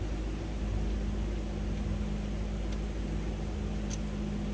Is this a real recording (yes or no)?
yes